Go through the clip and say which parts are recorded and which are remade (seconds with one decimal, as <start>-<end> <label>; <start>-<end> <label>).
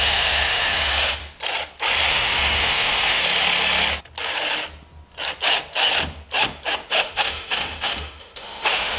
0.0-1.2 remade; 1.2-2.1 recorded; 2.1-3.2 remade; 3.2-6.9 recorded; 6.9-9.0 remade